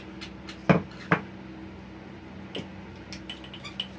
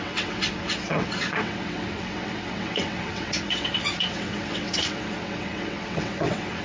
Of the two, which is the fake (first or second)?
second